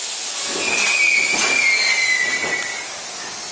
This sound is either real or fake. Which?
real